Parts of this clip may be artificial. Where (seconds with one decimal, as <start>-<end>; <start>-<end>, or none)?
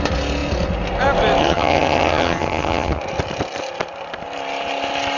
1.4-3.0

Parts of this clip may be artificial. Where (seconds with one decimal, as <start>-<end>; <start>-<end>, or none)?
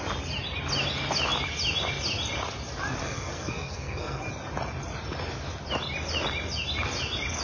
3.0-4.2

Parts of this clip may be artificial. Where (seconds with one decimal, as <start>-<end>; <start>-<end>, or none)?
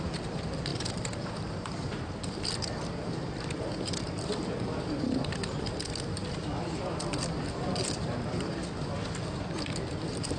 0.0-10.4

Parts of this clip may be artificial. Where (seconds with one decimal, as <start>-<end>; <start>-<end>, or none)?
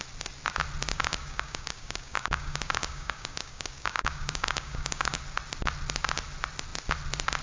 0.9-5.2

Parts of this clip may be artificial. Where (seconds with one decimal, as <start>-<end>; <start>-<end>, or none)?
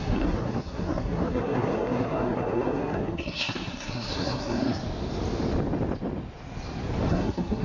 0.0-4.8; 7.1-7.6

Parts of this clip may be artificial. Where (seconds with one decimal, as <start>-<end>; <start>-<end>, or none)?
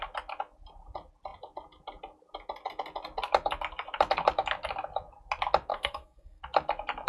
5.7-6.4